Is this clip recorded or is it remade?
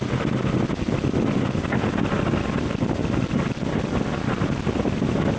recorded